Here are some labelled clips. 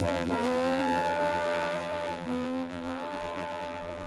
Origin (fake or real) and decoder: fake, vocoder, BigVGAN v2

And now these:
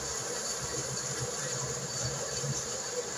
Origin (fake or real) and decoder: fake, vocoder, BigVGAN v2